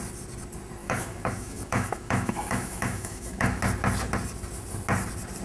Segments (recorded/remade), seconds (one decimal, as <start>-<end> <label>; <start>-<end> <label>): 0.0-0.8 recorded; 0.8-3.6 remade; 3.6-5.4 recorded